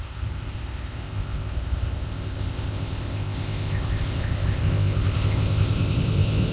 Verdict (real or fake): fake